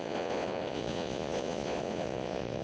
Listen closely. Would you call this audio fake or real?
fake